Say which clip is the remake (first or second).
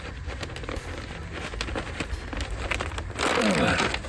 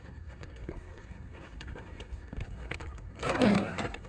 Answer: second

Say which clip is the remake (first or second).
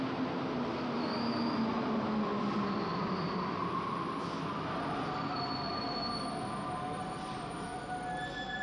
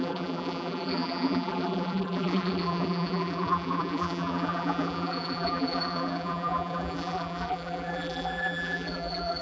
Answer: second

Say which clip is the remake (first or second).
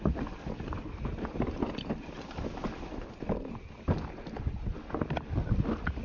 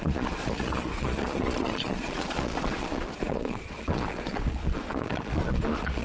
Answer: second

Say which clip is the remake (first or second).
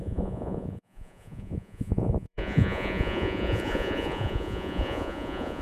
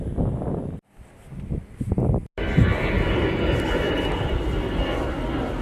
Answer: first